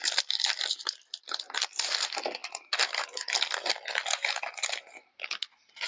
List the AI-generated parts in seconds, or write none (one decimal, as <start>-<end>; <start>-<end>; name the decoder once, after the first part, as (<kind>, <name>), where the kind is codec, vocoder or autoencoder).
none